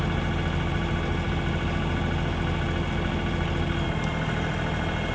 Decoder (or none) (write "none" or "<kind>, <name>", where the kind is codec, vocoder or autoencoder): none